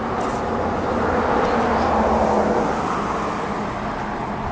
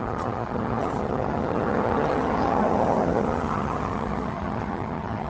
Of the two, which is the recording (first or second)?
first